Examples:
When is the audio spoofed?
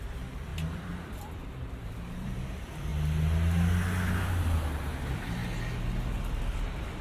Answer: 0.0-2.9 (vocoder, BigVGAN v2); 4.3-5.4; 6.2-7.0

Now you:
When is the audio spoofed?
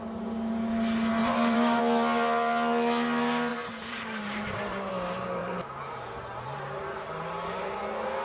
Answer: 1.2-1.8 (vocoder, BigVGAN v2); 3.5-4.9; 5.4-7.5